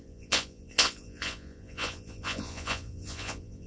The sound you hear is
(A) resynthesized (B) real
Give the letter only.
A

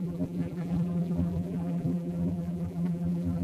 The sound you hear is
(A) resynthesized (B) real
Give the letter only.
A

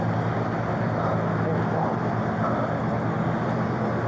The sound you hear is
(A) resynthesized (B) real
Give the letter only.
B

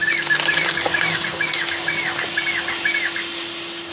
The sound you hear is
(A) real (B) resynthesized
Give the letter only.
A